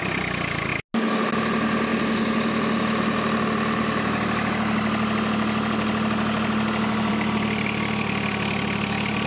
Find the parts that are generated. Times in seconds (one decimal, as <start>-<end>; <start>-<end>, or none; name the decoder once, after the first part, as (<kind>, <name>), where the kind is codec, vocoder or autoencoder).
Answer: none